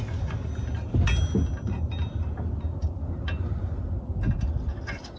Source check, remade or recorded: recorded